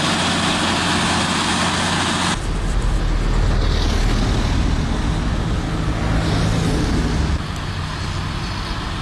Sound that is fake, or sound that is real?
real